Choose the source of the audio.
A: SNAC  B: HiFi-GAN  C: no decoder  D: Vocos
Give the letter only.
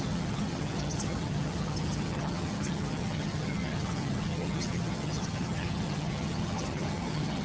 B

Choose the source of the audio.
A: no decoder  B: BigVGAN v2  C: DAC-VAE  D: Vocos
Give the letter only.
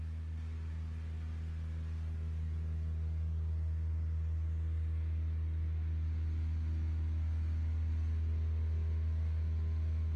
A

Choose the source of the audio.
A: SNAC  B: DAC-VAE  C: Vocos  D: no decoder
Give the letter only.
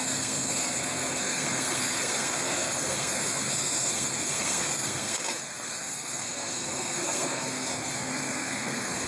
A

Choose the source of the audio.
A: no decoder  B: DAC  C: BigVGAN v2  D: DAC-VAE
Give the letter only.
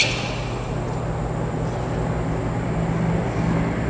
A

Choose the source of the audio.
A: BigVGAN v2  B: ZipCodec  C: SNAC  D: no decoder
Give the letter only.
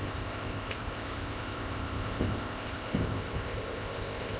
B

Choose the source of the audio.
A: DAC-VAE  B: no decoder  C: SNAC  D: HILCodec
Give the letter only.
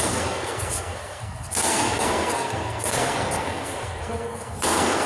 C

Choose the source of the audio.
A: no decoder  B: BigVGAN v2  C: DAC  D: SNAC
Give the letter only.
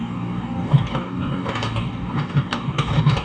C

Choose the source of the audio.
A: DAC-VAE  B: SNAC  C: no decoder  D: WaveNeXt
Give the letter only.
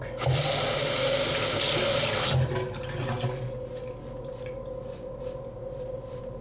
C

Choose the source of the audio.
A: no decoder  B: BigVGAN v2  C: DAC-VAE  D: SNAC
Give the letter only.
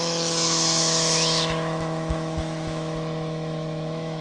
C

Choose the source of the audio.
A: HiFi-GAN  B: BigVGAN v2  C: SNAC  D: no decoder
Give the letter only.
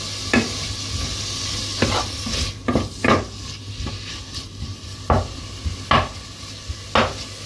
D